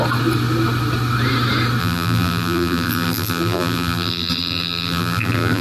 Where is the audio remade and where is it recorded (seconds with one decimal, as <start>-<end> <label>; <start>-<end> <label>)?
0.0-1.8 recorded; 1.8-5.6 remade